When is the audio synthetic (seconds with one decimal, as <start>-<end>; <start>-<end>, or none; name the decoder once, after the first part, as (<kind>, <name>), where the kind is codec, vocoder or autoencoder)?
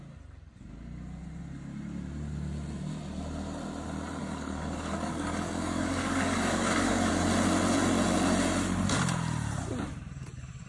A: 4.2-7.1 (codec, DAC)